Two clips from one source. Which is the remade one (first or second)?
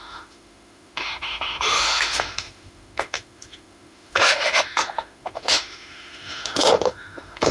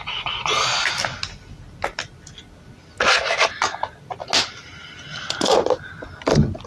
first